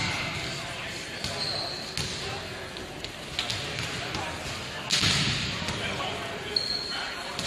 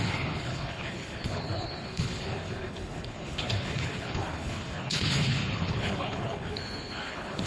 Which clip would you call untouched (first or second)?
first